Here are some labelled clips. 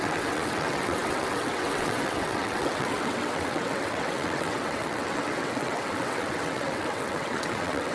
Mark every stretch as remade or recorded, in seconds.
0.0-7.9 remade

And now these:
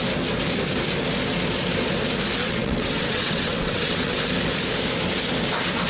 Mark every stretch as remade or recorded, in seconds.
0.0-2.4 recorded; 2.4-4.2 remade; 4.2-5.9 recorded

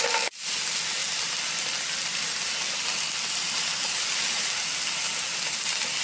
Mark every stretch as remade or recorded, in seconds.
0.0-6.0 recorded

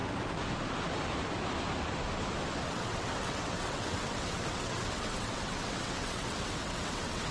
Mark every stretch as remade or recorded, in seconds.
0.0-2.7 recorded; 2.7-7.3 remade

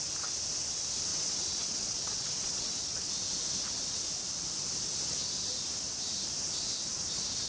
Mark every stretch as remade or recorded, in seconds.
0.0-1.1 recorded; 1.1-3.1 remade; 3.1-7.5 recorded

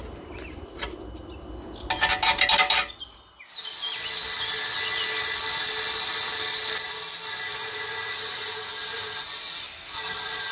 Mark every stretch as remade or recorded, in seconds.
0.0-10.5 recorded

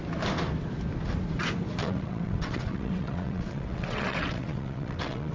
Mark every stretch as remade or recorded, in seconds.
0.0-1.8 recorded; 1.8-5.3 remade